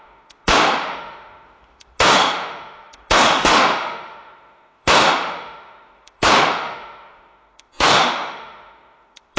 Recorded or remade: remade